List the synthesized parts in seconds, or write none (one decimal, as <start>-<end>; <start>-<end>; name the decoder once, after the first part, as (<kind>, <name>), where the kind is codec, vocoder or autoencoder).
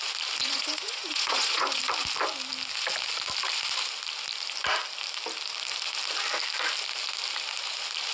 0.4-1.8 (vocoder, Vocos)